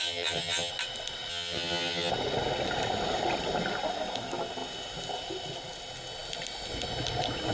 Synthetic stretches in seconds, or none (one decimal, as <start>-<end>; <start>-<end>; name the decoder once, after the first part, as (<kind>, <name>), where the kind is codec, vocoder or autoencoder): 0.0-0.7 (vocoder, HiFi-GAN); 1.3-2.1